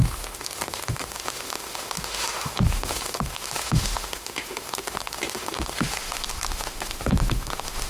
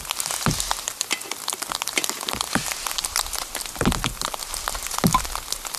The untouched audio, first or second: second